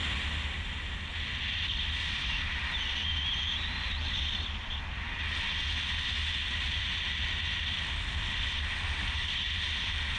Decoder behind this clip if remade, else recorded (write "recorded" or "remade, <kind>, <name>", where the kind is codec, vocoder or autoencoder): recorded